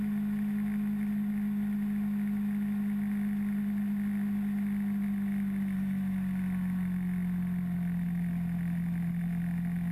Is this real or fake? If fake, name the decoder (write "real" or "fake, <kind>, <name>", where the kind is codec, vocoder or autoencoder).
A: real